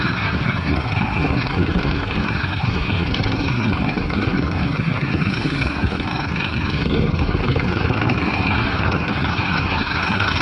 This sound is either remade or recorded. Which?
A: remade